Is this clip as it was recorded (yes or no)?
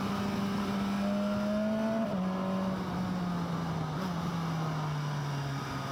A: yes